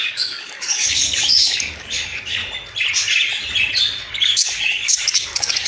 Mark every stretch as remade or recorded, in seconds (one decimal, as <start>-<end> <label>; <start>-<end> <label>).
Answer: 0.0-2.4 remade; 2.4-4.1 recorded; 4.1-5.7 remade